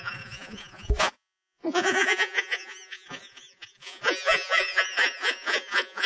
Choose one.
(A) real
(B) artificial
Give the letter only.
B